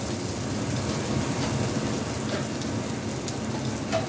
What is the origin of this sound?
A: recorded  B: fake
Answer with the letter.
A